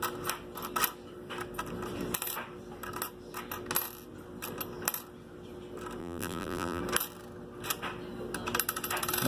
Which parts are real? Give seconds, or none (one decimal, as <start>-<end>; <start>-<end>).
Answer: 0.0-6.0; 6.8-9.3